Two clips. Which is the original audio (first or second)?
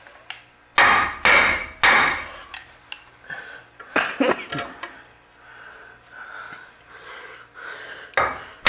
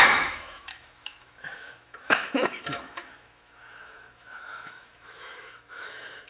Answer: first